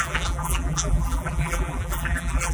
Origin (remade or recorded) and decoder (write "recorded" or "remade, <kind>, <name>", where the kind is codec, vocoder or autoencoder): remade, vocoder, BigVGAN v2